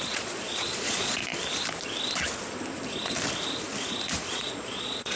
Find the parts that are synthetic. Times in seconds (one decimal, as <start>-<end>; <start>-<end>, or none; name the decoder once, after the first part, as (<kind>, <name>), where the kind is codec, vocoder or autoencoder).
0.0-1.2 (vocoder, Vocos); 4.3-5.2